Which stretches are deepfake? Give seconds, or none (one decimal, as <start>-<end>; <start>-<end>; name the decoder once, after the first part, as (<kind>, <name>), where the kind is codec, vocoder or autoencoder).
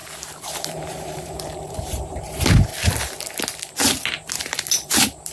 0.0-2.7 (vocoder, BigVGAN v2); 4.4-5.3